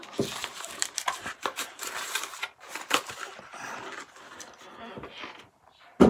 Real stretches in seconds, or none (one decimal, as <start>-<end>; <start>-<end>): 0.0-0.4; 2.6-6.1